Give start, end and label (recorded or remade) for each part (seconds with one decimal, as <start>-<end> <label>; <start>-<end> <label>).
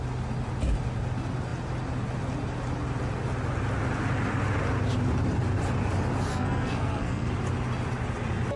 0.0-6.3 recorded; 6.3-7.3 remade; 7.3-8.6 recorded